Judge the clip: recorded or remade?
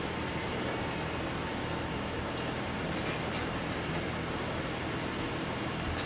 recorded